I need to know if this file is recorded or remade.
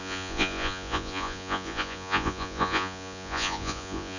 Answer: remade